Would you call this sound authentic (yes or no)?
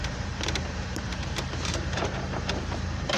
no